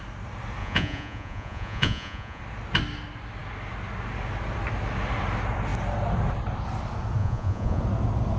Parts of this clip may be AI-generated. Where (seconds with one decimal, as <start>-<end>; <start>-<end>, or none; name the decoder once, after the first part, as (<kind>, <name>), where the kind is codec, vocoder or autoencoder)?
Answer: 0.6-2.4 (vocoder, Vocos); 7.2-7.8